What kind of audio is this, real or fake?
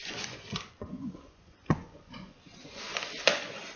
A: fake